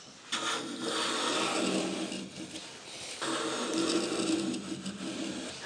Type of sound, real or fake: real